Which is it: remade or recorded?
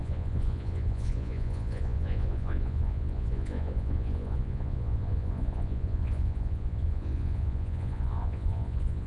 remade